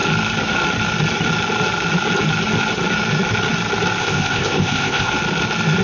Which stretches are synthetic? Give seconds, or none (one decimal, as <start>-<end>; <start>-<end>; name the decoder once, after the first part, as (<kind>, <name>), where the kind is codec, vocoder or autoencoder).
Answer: 4.0-5.1 (codec, ZipCodec)